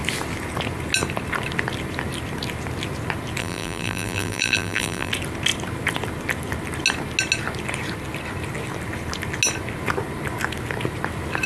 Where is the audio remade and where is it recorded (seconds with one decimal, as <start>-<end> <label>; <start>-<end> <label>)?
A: 0.0-3.4 recorded; 3.4-5.1 remade; 5.1-11.5 recorded